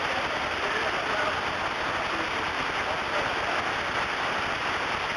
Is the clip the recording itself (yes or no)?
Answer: yes